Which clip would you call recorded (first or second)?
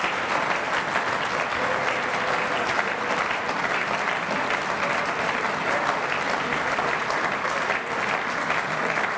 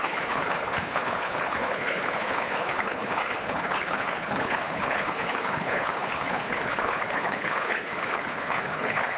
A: first